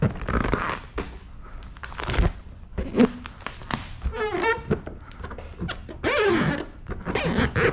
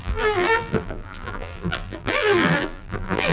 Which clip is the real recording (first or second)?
first